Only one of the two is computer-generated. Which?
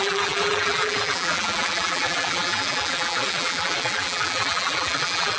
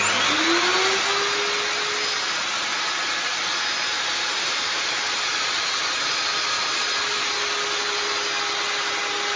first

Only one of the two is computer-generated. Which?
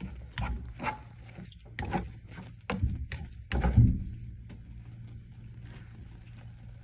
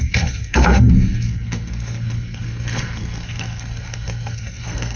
second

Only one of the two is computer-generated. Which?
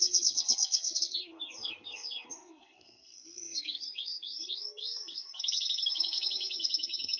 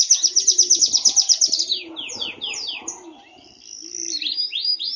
first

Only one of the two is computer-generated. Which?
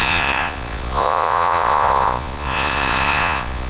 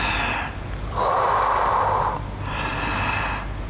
first